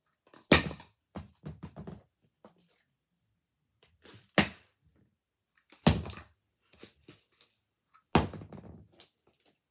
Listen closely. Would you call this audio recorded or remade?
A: recorded